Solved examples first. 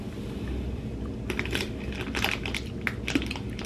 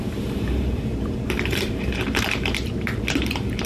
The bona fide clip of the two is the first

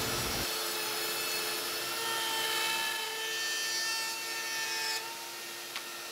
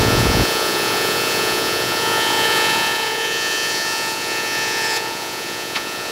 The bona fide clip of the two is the first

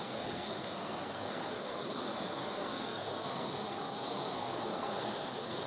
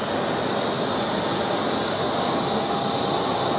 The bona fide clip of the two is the second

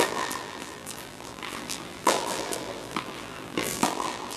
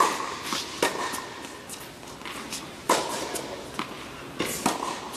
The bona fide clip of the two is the second